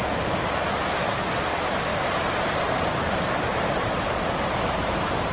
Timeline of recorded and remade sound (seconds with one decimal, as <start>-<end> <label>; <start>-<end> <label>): 0.0-1.9 recorded; 1.9-5.3 remade